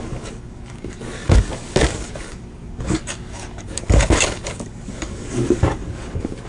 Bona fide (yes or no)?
no